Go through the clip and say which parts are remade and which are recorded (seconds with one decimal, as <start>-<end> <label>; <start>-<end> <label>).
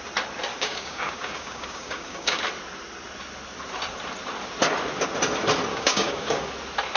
0.0-0.5 recorded; 0.5-2.4 remade; 2.4-5.7 recorded; 5.7-6.5 remade; 6.5-7.0 recorded